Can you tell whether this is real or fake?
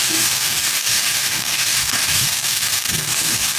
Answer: fake